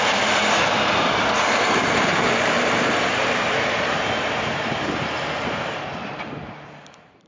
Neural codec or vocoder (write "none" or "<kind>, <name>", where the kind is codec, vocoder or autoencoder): vocoder, BigVGAN v2